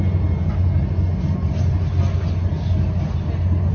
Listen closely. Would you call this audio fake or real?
real